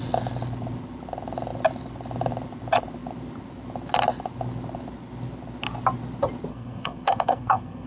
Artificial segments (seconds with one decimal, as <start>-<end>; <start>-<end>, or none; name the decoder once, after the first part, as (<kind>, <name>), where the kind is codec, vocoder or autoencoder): 6.5-7.9 (codec, SNAC)